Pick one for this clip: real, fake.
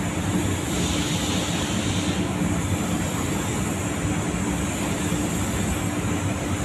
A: real